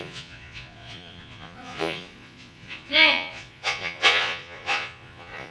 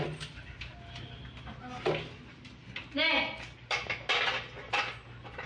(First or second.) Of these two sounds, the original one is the second